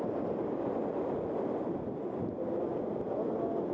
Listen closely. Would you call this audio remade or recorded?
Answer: recorded